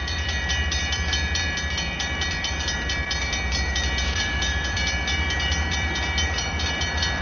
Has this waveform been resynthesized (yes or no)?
yes